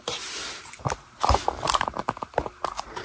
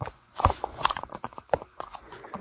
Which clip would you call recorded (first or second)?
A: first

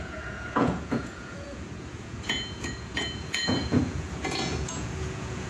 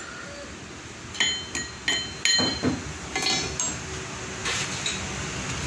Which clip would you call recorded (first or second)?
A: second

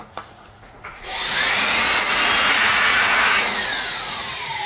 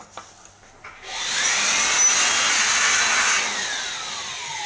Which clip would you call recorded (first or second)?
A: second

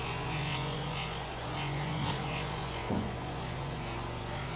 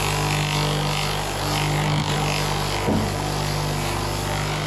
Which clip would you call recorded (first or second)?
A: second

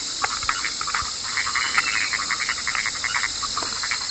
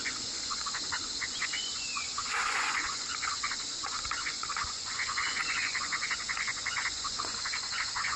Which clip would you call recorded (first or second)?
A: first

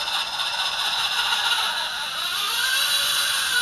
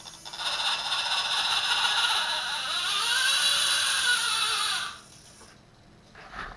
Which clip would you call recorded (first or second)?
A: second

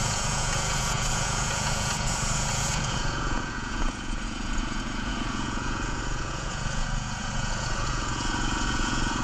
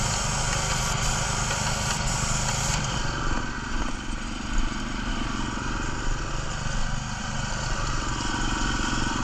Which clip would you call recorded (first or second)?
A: second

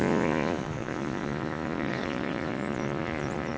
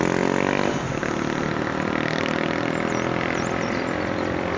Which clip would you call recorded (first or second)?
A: second